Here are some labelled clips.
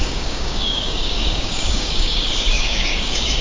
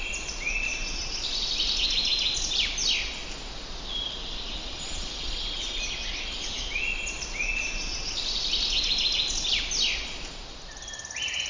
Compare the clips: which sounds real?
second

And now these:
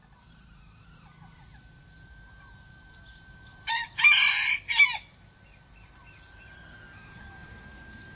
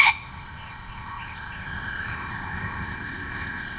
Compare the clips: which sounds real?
first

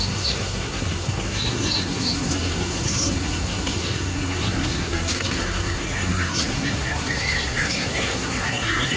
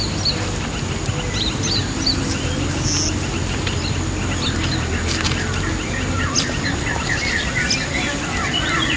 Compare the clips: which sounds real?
second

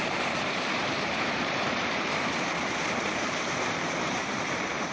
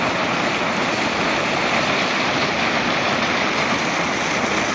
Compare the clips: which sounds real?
second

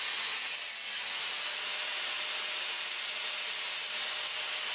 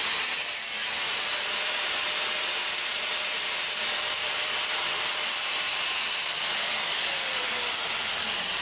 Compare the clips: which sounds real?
first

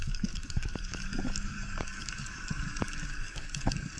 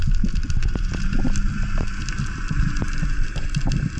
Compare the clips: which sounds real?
second